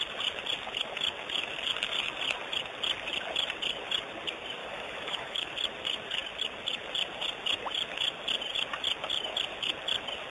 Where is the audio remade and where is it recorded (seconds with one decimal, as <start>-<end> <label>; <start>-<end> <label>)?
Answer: 0.0-4.6 recorded; 4.6-5.5 remade; 5.5-10.3 recorded